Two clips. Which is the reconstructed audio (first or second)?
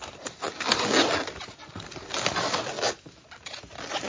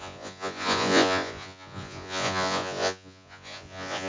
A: second